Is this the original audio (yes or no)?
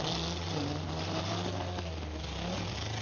yes